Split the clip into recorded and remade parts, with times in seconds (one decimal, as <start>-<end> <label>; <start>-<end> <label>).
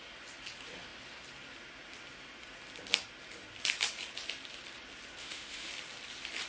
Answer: 0.0-5.2 recorded; 5.2-5.7 remade; 5.7-6.5 recorded